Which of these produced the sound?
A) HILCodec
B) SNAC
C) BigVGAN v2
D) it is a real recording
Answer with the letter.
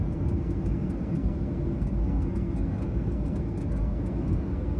B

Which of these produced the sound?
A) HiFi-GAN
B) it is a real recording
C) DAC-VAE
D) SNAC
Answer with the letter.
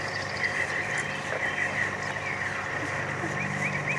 B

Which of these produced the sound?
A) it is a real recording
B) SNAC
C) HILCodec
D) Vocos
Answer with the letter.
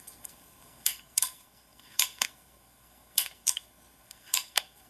B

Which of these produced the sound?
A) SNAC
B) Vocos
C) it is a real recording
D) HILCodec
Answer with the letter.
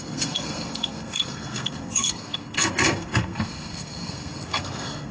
A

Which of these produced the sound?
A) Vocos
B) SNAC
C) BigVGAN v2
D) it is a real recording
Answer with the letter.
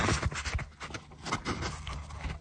D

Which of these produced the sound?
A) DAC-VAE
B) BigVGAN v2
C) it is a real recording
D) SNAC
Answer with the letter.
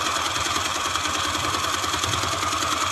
C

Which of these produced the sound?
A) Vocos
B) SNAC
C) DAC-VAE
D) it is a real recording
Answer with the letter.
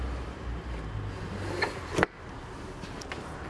D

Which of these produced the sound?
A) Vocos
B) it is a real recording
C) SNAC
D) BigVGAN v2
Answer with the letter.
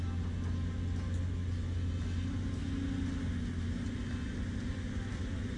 B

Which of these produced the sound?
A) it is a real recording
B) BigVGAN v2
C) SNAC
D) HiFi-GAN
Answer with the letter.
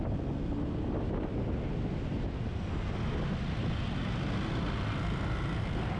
A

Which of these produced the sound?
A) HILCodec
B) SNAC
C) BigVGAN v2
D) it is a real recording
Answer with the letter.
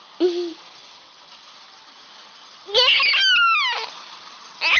D